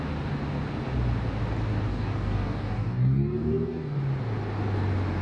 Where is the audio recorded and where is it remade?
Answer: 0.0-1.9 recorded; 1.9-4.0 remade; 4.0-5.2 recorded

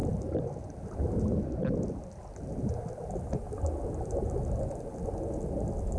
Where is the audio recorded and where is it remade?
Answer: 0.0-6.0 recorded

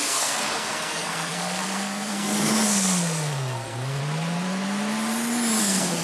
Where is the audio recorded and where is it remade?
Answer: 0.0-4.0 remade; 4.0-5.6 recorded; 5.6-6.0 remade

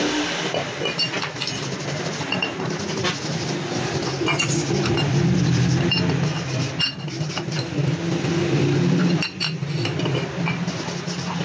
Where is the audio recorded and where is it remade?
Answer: 0.0-11.4 recorded

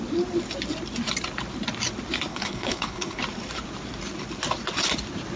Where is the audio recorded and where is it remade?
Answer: 0.0-2.3 recorded; 2.3-3.2 remade; 3.2-5.4 recorded

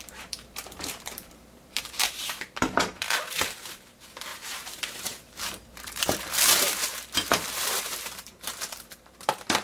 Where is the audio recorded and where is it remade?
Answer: 0.0-9.6 remade

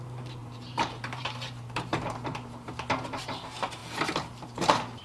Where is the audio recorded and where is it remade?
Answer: 0.0-0.4 recorded; 0.4-2.7 remade; 2.7-3.8 recorded; 3.8-5.0 remade